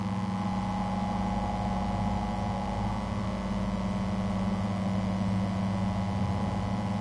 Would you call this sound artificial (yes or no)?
no